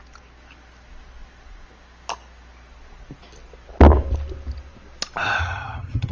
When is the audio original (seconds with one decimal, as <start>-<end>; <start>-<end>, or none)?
0.0-5.4